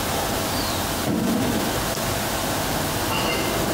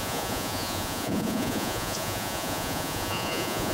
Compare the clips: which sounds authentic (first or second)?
first